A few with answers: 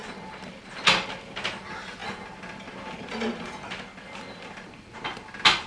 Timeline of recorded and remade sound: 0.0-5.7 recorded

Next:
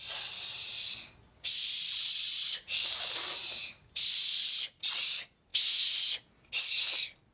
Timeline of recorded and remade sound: 0.0-7.3 recorded

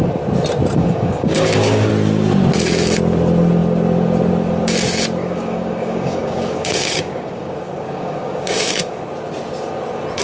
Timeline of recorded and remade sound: 0.0-0.8 recorded; 0.8-1.9 remade; 1.9-5.2 recorded; 5.2-9.0 remade; 9.0-10.2 recorded

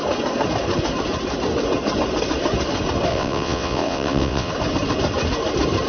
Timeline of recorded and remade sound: 0.0-3.1 recorded; 3.1-4.5 remade; 4.5-5.9 recorded

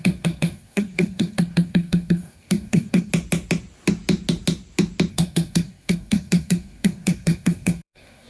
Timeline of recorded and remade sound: 0.0-3.1 remade; 3.1-5.1 recorded; 5.1-8.3 remade

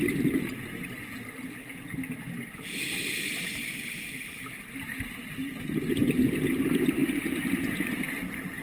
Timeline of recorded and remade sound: 0.0-8.6 recorded

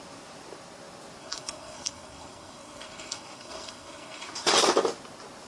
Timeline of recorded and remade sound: 0.0-1.2 recorded; 1.2-4.5 remade; 4.5-5.5 recorded